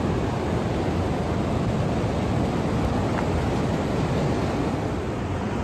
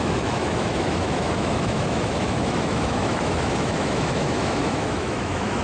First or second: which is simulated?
second